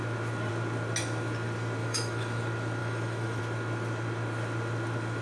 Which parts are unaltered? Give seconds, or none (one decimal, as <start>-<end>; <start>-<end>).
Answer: 0.0-1.8; 2.4-2.8; 3.4-5.2